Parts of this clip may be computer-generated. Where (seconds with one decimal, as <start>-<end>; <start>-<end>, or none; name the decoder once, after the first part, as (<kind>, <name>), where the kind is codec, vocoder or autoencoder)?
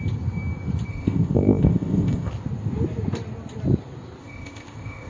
0.9-2.3 (codec, ZipCodec); 4.2-5.1